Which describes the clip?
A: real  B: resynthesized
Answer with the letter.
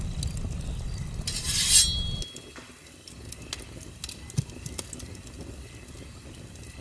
A